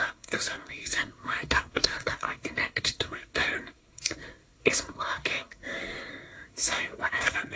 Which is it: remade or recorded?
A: remade